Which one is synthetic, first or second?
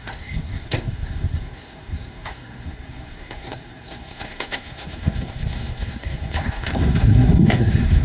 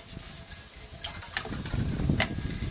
first